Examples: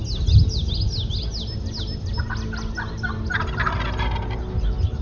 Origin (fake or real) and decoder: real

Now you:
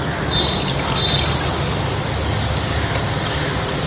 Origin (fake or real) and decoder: real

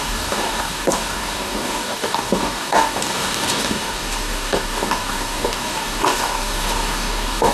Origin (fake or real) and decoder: fake, codec, DAC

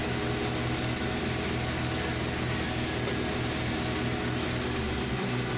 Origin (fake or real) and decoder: real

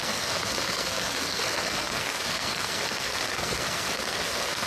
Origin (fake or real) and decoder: fake, codec, SNAC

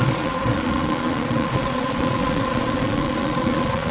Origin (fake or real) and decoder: fake, vocoder, Vocos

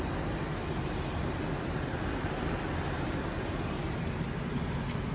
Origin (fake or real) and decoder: real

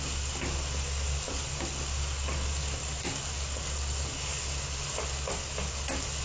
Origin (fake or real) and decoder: real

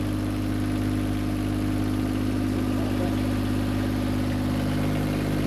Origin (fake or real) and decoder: real